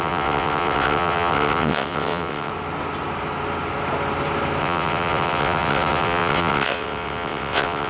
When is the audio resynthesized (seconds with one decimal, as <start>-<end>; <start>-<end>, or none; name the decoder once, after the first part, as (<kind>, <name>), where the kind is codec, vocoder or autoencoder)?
0.0-2.5 (vocoder, WaveNeXt); 4.6-7.9